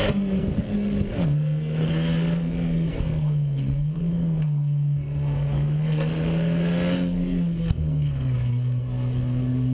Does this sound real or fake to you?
fake